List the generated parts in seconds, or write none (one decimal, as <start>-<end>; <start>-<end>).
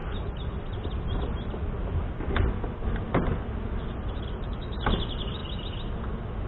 5.4-5.9